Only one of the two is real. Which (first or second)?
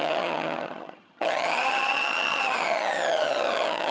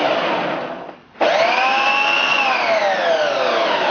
second